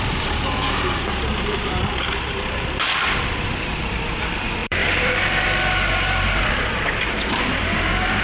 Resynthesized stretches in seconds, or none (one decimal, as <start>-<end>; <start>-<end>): 0.0-8.2